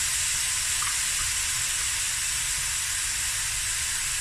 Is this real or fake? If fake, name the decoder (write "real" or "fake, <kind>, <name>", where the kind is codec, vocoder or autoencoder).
real